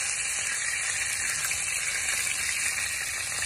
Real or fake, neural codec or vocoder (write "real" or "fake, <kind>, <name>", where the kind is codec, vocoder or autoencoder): real